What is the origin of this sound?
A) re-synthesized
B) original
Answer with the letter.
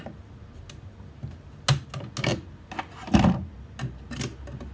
B